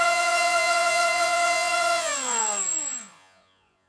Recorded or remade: remade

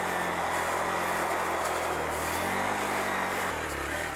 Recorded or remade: recorded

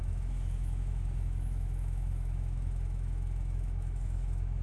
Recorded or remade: remade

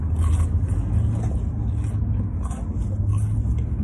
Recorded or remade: recorded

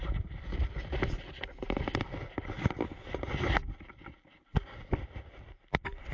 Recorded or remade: recorded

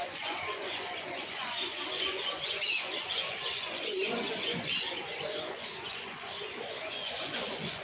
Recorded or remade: remade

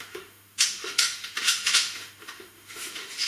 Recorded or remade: remade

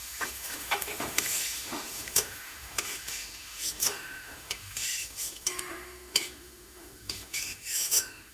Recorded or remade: remade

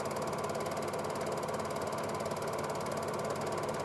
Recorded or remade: recorded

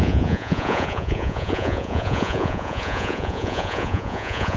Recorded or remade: remade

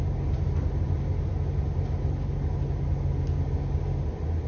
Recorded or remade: recorded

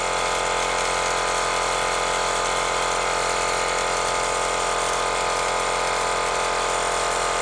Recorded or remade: recorded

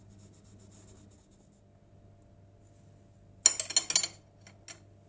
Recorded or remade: recorded